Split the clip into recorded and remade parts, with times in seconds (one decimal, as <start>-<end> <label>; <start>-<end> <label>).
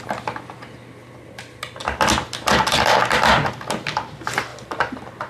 0.0-4.5 recorded; 4.5-5.3 remade